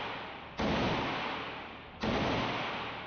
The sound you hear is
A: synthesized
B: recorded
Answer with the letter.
B